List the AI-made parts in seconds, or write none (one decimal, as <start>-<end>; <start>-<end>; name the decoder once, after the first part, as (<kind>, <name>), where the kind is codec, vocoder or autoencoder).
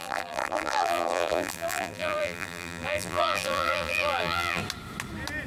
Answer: 0.0-4.6 (vocoder, BigVGAN v2)